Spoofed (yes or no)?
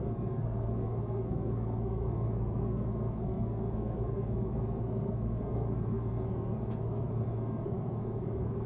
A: yes